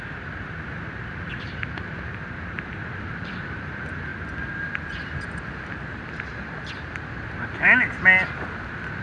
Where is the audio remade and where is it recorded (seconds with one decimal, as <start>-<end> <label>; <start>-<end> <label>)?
0.0-4.1 remade; 4.1-9.0 recorded